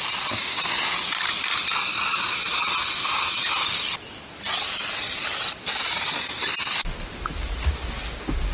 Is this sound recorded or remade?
recorded